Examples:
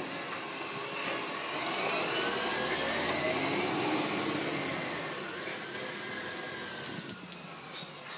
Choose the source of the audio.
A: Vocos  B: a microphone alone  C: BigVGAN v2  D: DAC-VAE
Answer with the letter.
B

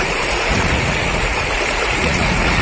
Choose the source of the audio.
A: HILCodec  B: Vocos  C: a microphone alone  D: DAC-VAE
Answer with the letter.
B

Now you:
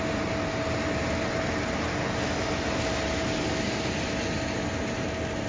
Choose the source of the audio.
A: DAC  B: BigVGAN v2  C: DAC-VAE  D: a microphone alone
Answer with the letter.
D